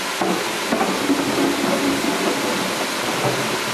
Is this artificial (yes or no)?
no